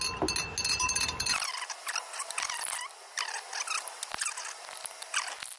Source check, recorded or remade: recorded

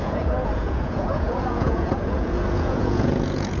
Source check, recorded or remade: remade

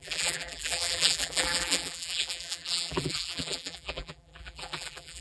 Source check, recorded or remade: remade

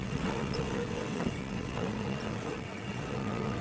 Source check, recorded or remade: remade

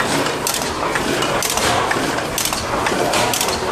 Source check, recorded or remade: recorded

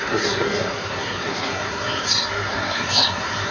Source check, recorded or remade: remade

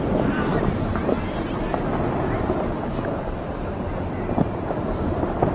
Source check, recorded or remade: recorded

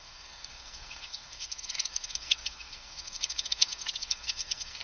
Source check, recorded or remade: remade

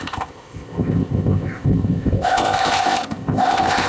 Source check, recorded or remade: remade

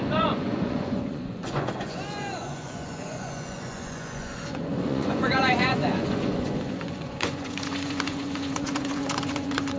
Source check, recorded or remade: remade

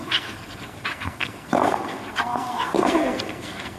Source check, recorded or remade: remade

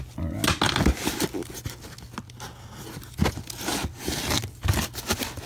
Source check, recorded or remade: recorded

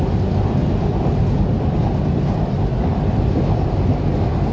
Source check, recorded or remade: recorded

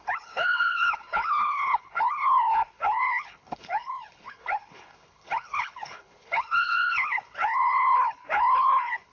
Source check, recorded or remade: remade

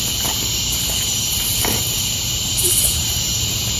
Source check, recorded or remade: remade